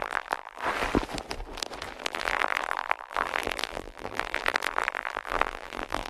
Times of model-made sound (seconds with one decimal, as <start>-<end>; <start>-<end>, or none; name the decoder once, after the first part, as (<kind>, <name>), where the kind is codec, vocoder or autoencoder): 0.0-0.6 (vocoder, BigVGAN v2); 2.0-6.1